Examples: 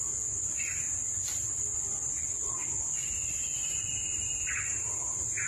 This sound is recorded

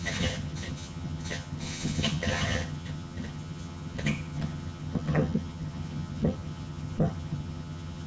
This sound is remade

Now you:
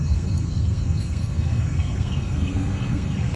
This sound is remade